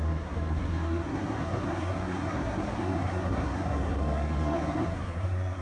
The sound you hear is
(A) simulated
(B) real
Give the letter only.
A